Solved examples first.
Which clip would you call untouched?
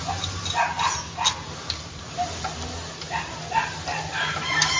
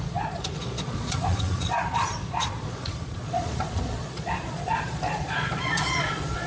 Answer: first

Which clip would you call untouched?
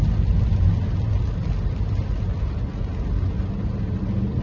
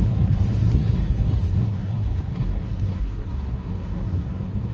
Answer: first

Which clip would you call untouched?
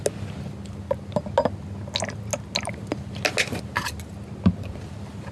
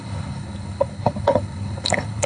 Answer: first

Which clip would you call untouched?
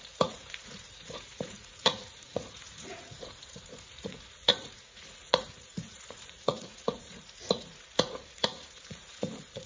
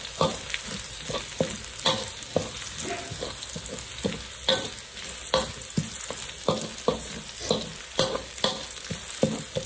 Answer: second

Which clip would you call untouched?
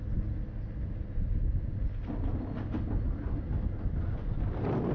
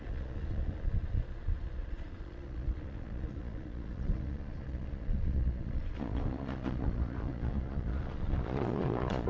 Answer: first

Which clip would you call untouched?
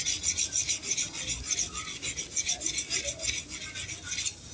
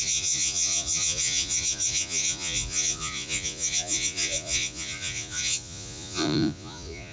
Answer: first